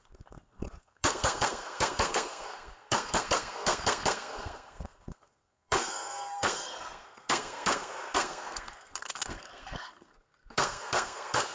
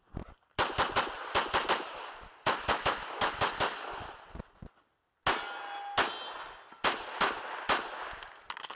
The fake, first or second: first